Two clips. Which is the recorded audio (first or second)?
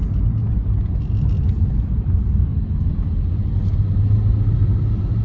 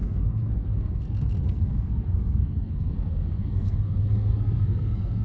first